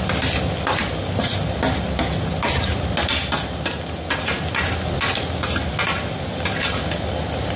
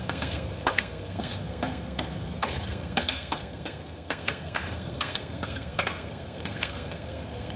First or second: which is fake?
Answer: second